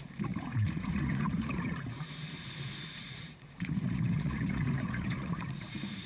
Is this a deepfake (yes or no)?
yes